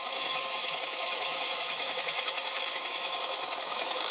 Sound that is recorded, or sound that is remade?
remade